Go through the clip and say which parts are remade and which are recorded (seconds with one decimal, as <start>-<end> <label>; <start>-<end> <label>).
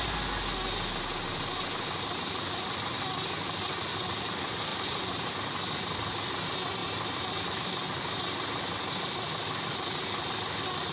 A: 0.0-4.7 recorded; 4.7-5.3 remade; 5.3-6.8 recorded; 6.8-7.5 remade; 7.5-10.9 recorded